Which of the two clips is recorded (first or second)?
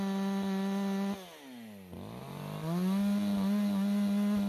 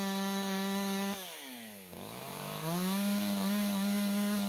first